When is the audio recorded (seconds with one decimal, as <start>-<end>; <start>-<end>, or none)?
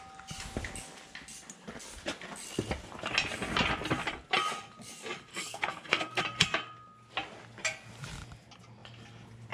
0.0-5.3; 6.2-9.5